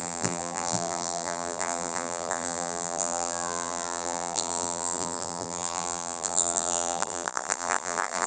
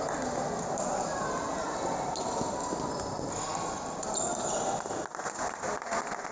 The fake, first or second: first